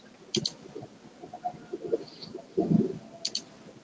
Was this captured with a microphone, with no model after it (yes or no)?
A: yes